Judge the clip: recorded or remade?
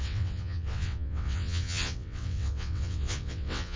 remade